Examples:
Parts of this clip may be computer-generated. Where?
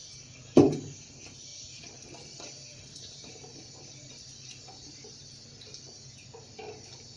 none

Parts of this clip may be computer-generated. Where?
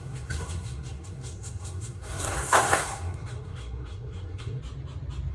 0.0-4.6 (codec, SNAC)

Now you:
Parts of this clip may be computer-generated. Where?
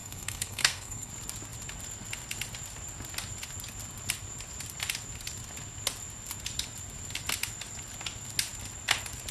0.0-1.1 (codec, SNAC)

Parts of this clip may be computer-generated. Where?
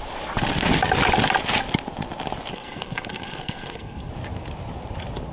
2.5-4.1 (codec, SNAC)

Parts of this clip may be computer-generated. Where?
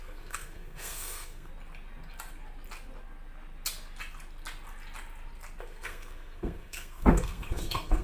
0.0-1.5 (codec, SNAC); 5.6-8.0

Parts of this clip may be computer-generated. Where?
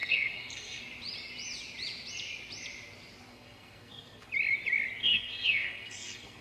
0.0-0.8 (codec, SNAC); 3.3-4.3; 5.0-6.4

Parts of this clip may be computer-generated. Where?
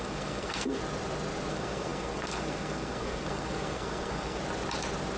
0.0-0.8 (codec, SNAC); 1.5-4.4